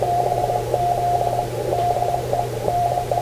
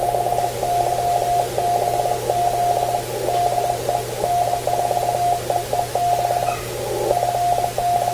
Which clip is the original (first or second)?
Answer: second